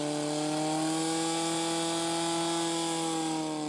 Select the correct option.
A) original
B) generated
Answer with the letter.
A